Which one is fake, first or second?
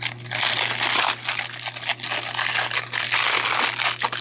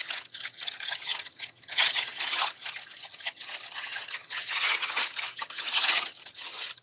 second